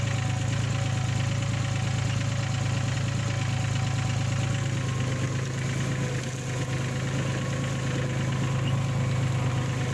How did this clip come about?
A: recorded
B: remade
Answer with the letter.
A